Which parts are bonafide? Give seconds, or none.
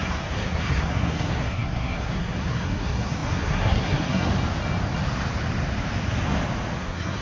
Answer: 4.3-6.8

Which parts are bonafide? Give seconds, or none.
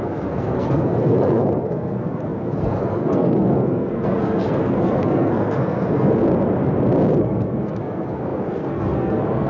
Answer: 6.2-7.2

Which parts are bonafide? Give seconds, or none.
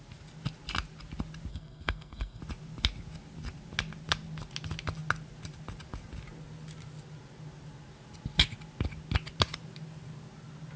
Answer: 0.0-1.5; 2.4-10.8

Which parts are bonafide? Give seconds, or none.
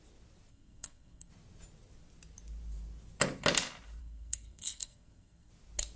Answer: 0.0-0.5; 1.3-4.0; 5.5-6.0